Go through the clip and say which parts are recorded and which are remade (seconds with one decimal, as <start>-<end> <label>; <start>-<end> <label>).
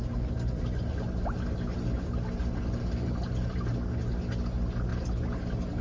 0.0-5.8 recorded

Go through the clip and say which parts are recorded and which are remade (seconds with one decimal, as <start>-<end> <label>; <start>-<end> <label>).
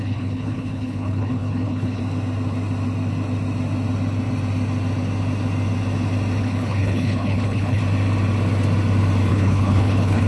0.0-2.0 remade; 2.0-6.4 recorded; 6.4-7.8 remade; 7.8-9.3 recorded; 9.3-10.3 remade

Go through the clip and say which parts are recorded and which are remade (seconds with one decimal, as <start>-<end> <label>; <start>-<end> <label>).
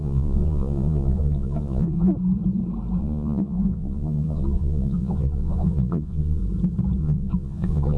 0.0-2.1 remade; 2.1-3.0 recorded; 3.0-6.4 remade; 6.4-7.0 recorded; 7.0-8.0 remade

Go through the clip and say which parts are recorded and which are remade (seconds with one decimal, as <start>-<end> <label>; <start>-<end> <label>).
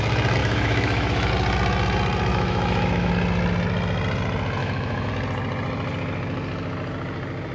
0.0-0.4 recorded; 0.4-1.3 remade; 1.3-2.3 recorded; 2.3-3.1 remade; 3.1-4.6 recorded; 4.6-5.1 remade; 5.1-7.5 recorded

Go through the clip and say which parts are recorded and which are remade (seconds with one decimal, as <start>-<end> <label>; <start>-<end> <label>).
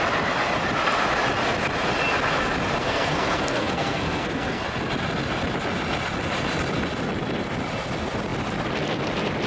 0.0-2.8 recorded; 2.8-4.6 remade; 4.6-9.5 recorded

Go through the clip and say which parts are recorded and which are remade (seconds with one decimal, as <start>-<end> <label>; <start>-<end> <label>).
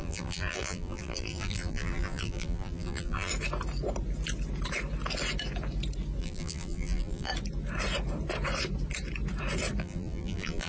0.0-3.3 remade; 3.3-6.2 recorded; 6.2-7.3 remade; 7.3-9.8 recorded; 9.8-10.7 remade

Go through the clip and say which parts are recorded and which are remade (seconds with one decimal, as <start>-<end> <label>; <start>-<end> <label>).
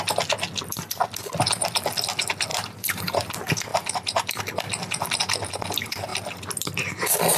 0.0-2.5 recorded; 2.5-3.3 remade; 3.3-3.7 recorded; 3.7-4.4 remade; 4.4-6.1 recorded; 6.1-6.7 remade; 6.7-7.4 recorded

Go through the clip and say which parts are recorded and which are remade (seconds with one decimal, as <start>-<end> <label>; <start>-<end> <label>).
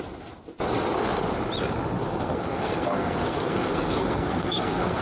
0.0-2.1 recorded; 2.1-5.0 remade